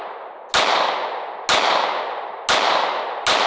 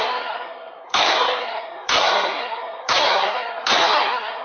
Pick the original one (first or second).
first